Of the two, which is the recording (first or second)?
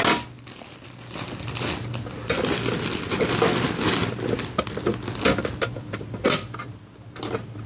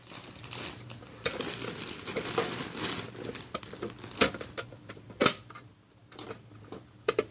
first